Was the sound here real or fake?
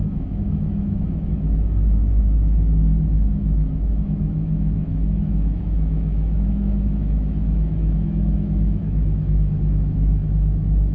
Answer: fake